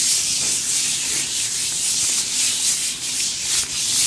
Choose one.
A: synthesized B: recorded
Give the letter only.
B